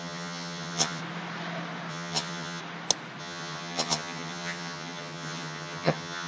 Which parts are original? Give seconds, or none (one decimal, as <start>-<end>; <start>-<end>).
1.0-1.9; 2.6-3.2